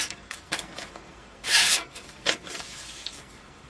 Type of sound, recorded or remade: remade